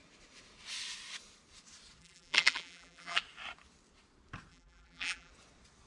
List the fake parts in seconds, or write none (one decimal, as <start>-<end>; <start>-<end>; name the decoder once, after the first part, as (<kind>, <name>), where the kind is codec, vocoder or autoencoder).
2.0-3.2 (vocoder, BigVGAN v2); 4.5-5.3